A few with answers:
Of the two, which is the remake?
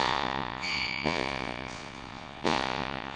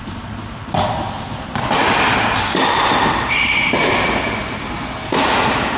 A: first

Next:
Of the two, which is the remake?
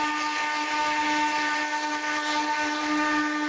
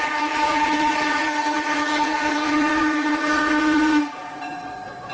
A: second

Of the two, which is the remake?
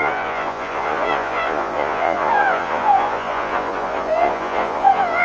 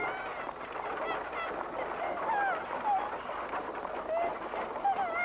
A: first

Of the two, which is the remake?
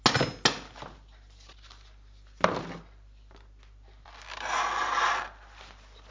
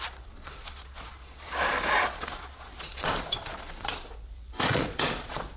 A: second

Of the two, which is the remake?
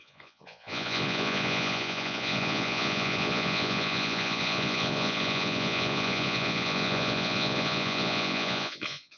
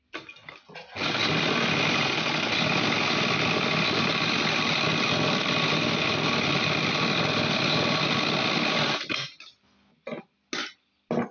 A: first